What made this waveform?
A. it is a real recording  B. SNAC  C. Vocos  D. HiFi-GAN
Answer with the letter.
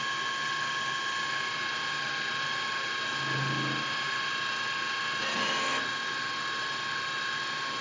A